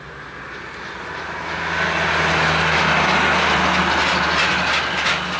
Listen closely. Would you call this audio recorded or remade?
recorded